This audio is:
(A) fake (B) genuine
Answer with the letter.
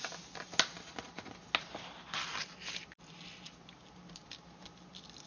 B